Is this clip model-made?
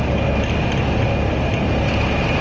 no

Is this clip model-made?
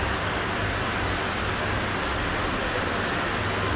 no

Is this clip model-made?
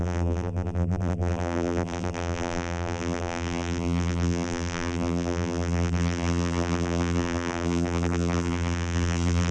yes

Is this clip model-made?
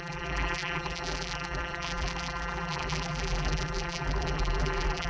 yes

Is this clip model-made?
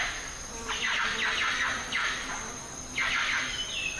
no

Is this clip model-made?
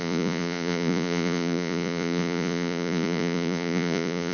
yes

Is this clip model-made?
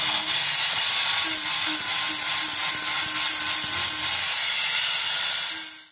no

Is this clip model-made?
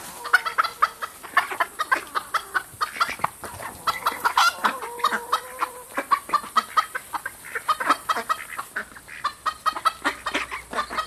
no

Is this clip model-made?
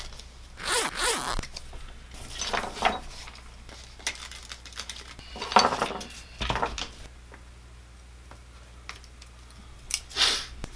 no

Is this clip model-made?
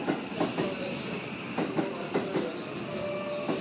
no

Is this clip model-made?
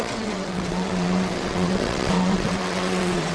yes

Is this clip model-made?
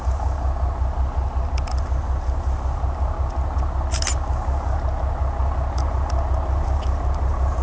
no